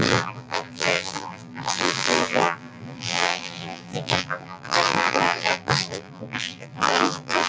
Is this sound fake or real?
fake